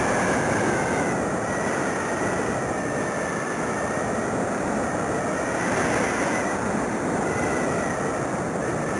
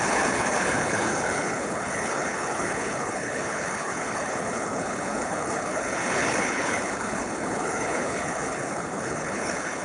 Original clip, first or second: first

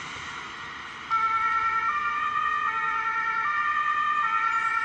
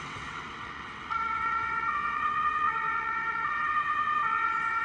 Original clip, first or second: first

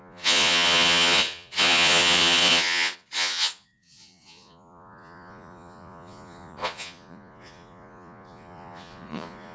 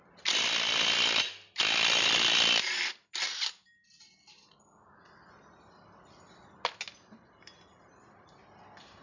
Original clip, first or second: second